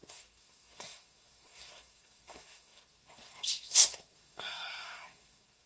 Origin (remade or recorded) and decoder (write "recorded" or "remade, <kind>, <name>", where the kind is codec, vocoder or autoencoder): remade, codec, SNAC